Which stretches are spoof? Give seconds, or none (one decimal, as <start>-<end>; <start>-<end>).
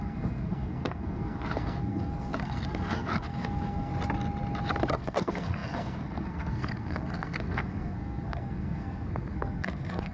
0.0-3.9; 4.9-10.1